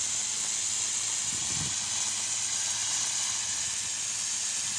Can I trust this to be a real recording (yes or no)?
yes